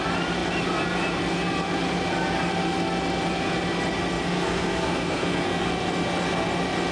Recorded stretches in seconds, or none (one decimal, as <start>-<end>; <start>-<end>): 0.0-4.2; 5.7-6.9

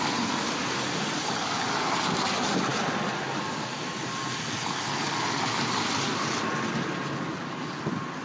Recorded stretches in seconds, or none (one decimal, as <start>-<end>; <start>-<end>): 0.0-2.7; 4.0-8.2

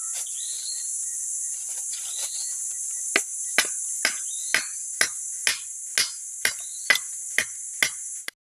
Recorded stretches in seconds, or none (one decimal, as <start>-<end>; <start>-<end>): 0.0-8.6